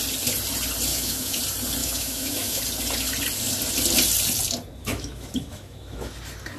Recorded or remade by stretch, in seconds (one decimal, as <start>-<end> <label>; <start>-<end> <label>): 0.0-0.9 recorded; 0.9-1.4 remade; 1.4-1.8 recorded; 1.8-2.6 remade; 2.6-4.8 recorded; 4.8-6.1 remade; 6.1-6.6 recorded